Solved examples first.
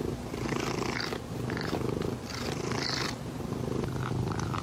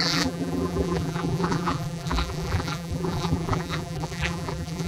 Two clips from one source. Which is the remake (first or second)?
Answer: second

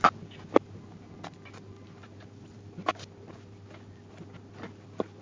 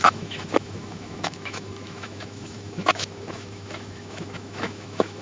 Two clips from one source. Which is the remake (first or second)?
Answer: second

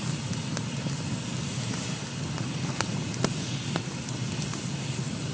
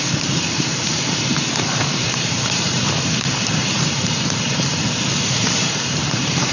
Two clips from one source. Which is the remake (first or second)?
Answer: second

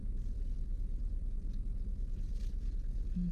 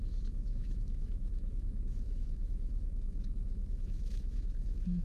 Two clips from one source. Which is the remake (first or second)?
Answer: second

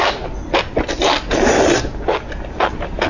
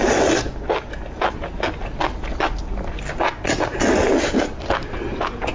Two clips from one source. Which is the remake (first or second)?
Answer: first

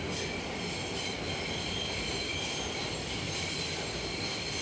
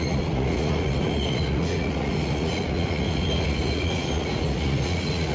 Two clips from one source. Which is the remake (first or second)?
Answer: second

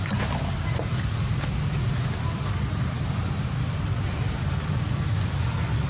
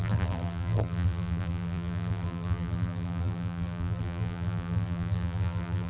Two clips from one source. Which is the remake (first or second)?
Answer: second